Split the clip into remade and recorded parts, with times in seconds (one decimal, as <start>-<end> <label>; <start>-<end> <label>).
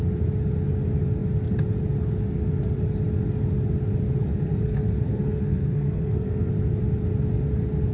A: 0.0-4.2 recorded; 4.2-6.5 remade; 6.5-7.9 recorded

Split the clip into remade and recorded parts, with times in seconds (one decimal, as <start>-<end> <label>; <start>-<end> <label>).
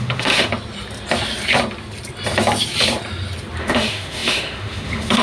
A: 0.0-0.5 remade; 0.5-3.6 recorded; 3.6-5.2 remade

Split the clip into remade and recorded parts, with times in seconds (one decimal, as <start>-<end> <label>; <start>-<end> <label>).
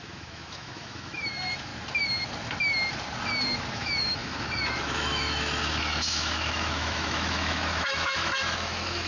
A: 0.0-1.7 remade; 1.7-3.7 recorded; 3.7-9.1 remade